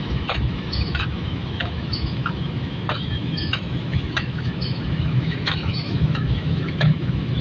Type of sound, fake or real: fake